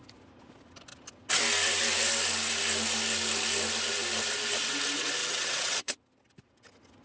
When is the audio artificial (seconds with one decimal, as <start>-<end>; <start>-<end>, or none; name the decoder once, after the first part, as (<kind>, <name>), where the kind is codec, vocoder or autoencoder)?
5.2-6.0 (vocoder, WaveNeXt)